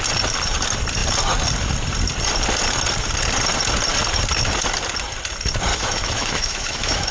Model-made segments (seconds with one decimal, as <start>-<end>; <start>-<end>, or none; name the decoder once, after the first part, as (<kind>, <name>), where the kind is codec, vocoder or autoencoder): 5.7-7.1 (autoencoder, DAC-VAE)